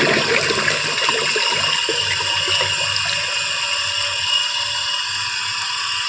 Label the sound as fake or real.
real